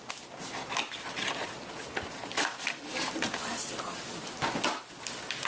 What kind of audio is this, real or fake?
real